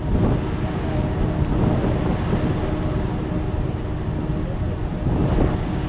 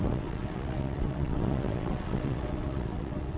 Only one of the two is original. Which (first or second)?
first